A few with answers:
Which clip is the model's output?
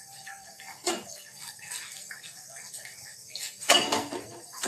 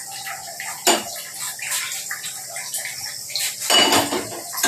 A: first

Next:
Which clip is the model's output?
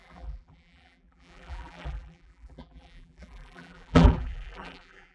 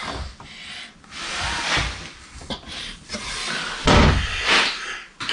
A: first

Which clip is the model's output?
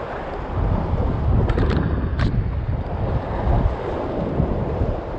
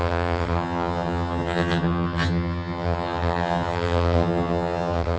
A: second